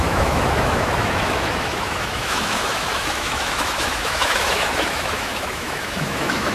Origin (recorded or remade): remade